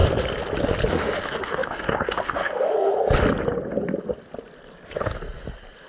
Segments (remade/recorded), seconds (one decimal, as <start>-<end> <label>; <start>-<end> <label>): 0.0-0.9 recorded; 0.9-2.9 remade; 2.9-5.9 recorded